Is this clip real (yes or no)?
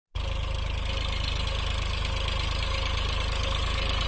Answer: yes